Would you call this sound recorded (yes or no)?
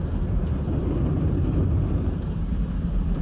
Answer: yes